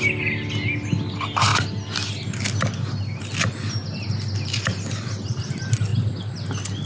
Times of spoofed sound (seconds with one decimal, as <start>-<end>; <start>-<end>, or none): none